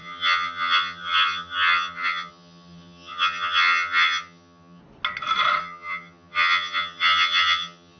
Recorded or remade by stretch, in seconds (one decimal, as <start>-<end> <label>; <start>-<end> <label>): 0.0-4.8 remade; 4.8-5.6 recorded; 5.6-8.0 remade